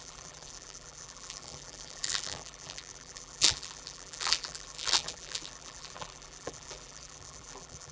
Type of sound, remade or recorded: remade